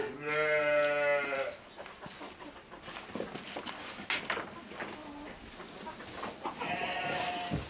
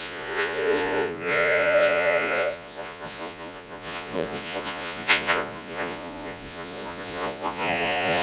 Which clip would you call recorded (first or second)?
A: first